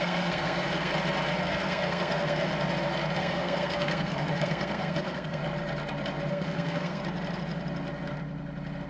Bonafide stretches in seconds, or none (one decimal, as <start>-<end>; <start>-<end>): 0.9-1.4; 2.5-3.2; 5.4-6.3; 7.0-8.9